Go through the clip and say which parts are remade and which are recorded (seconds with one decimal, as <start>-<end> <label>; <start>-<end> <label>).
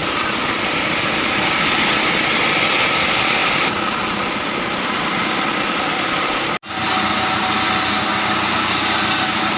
0.0-9.6 recorded